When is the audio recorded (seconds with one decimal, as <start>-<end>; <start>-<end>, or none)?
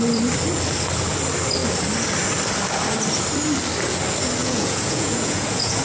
0.0-4.4